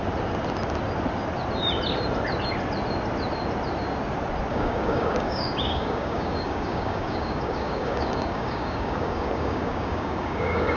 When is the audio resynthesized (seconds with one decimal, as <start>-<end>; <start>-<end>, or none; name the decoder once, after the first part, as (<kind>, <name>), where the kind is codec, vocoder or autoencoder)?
4.5-10.8 (codec, DAC)